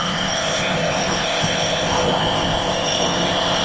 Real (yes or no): no